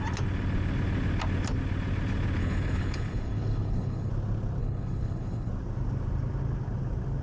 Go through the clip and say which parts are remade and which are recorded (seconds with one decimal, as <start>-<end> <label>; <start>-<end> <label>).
0.0-2.4 recorded; 2.4-4.1 remade; 4.1-4.6 recorded; 4.6-5.5 remade; 5.5-7.2 recorded